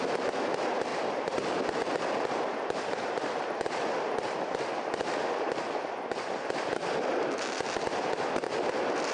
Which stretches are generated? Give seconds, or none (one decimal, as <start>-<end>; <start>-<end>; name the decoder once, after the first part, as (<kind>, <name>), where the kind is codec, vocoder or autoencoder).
none